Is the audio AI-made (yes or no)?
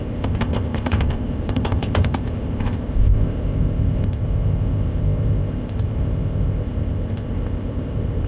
yes